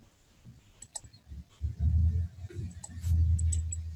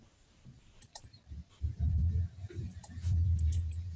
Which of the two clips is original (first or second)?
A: first